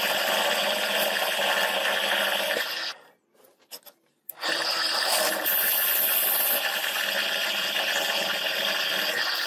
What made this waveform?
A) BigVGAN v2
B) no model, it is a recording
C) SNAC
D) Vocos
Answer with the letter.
A